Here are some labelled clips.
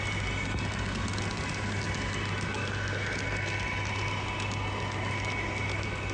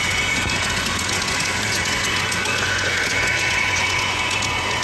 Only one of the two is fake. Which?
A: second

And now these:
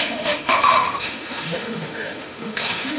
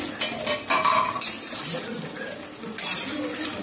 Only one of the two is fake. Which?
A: first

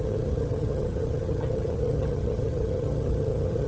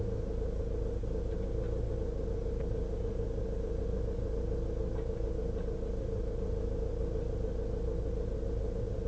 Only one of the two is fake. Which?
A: first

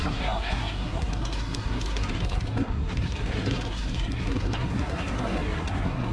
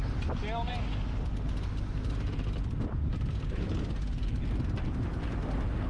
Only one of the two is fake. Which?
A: first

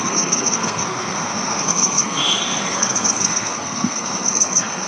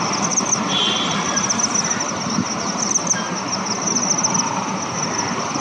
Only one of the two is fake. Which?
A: first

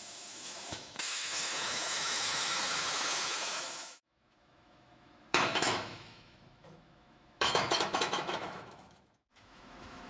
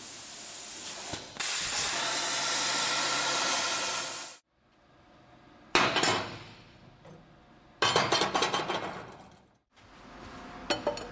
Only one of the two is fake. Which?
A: first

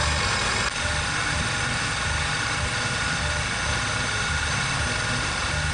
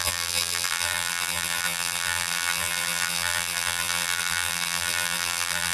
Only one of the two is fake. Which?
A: second